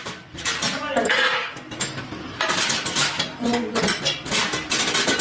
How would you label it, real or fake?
real